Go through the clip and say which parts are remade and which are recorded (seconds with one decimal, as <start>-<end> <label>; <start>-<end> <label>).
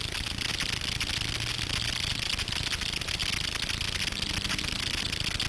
0.0-5.5 recorded